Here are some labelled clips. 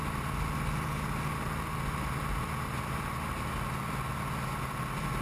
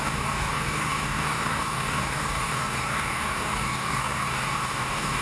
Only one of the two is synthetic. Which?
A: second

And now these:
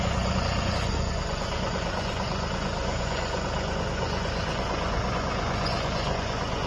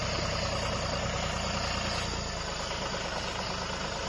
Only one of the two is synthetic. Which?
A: first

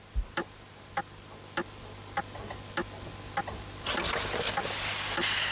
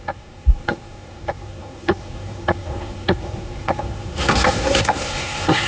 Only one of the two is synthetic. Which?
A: second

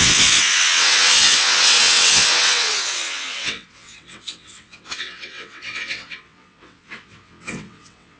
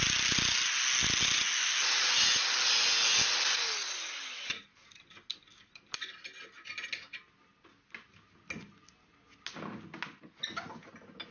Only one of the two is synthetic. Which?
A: first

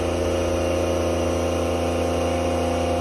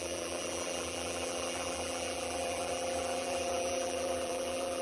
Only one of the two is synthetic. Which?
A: second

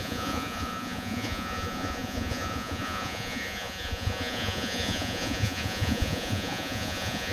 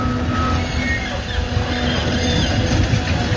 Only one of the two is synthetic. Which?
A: first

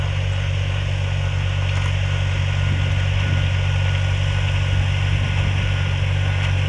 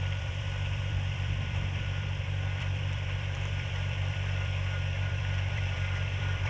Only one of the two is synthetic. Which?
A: second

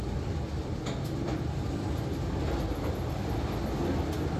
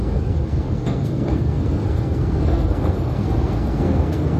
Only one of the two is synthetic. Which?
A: second